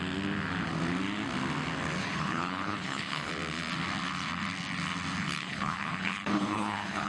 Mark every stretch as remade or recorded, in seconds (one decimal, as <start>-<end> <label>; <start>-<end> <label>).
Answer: 0.0-2.0 recorded; 2.0-3.3 remade; 3.3-5.4 recorded; 5.4-7.1 remade